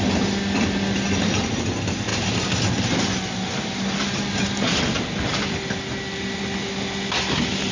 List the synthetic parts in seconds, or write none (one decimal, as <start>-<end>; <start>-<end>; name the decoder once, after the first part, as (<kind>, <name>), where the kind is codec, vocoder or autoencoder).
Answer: none